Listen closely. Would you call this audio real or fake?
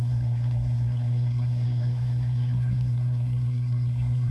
fake